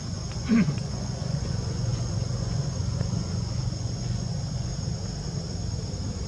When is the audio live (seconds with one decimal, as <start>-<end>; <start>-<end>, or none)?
4.7-6.3